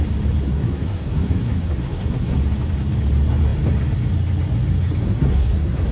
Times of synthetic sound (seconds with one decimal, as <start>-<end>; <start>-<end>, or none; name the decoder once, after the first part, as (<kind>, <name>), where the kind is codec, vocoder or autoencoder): 0.4-2.4 (codec, SNAC); 5.0-5.9